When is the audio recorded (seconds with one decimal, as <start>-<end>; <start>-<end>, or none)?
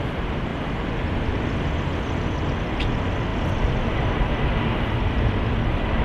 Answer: 0.0-6.0